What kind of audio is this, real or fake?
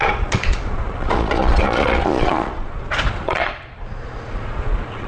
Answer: fake